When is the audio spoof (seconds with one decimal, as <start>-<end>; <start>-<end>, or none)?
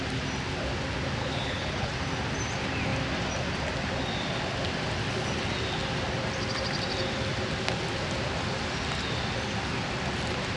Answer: 1.2-1.9